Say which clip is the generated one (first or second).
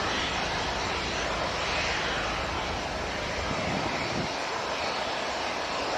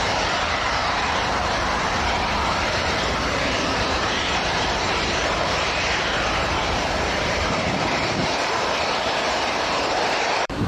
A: second